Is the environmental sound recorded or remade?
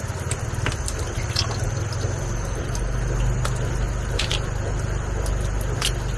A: recorded